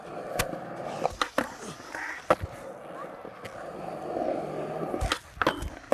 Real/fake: real